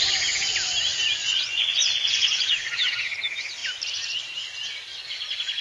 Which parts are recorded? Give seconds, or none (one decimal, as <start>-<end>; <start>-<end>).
0.0-1.2; 2.5-5.6